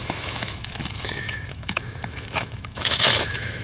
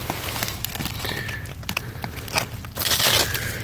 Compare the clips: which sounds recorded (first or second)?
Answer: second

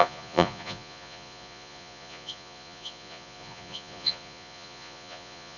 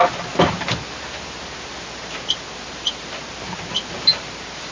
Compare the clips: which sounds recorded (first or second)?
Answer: second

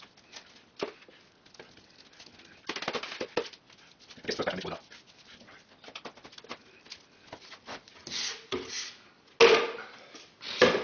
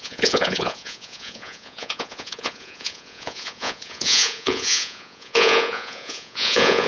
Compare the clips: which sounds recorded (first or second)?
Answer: first